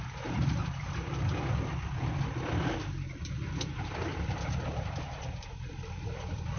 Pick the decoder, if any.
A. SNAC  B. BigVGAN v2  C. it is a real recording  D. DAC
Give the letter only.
B